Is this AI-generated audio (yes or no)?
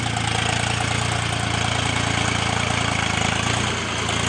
no